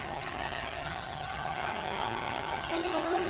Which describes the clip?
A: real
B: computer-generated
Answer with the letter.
B